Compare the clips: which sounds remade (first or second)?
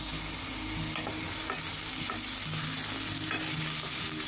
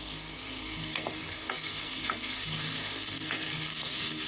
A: second